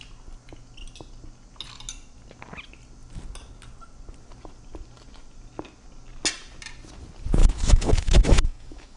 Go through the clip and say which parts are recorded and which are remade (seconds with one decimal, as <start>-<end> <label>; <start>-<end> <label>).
0.0-7.4 recorded; 7.4-9.0 remade